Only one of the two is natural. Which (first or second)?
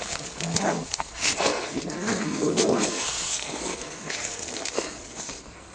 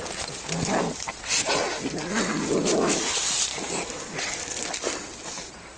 second